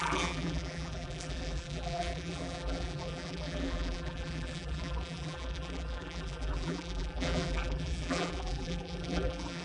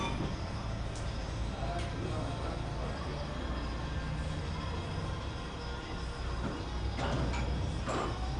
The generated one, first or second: first